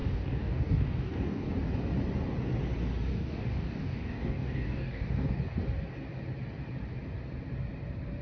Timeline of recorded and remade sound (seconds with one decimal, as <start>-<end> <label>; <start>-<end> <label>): 0.0-1.5 remade; 1.5-3.1 recorded; 3.1-5.4 remade; 5.4-8.2 recorded